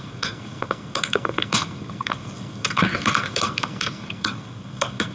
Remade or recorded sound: remade